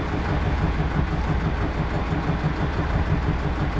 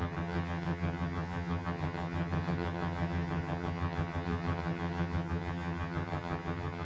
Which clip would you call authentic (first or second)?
first